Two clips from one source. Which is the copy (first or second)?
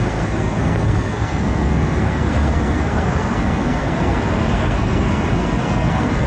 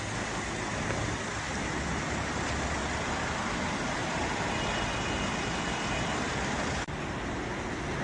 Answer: first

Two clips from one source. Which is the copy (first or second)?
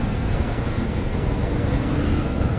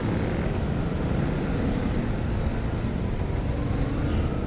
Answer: first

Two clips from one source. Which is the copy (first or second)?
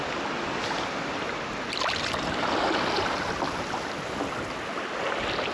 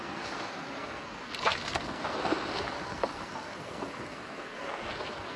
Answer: second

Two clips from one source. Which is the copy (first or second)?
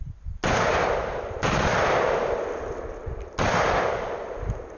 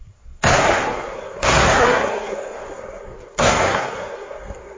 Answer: second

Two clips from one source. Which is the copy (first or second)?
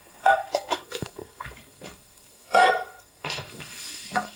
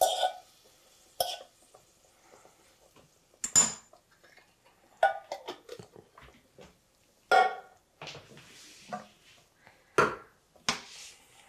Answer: first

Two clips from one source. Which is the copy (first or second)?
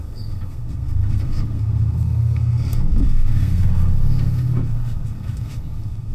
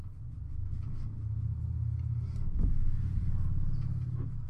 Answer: first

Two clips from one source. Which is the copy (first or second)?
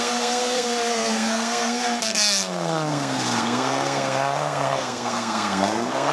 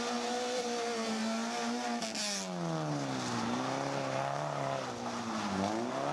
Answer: first